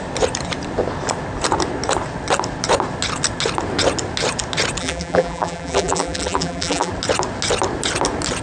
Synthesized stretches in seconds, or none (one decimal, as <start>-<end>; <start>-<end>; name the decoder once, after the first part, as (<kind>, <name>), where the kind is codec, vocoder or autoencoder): 4.8-6.9 (vocoder, BigVGAN v2)

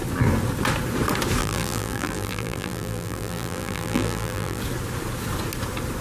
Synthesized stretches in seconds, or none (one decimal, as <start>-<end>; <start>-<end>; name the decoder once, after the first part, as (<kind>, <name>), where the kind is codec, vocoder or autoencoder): 1.4-4.6 (vocoder, BigVGAN v2)